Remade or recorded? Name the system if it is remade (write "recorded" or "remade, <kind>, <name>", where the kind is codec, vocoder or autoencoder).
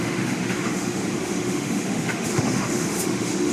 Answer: remade, autoencoder, DAC-VAE